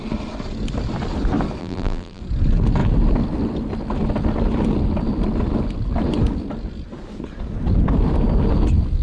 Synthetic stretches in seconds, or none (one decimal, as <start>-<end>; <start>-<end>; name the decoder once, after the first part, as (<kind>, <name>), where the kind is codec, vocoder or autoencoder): 1.6-2.2 (vocoder, BigVGAN v2)